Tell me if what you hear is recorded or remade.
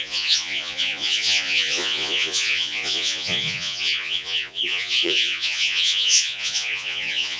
remade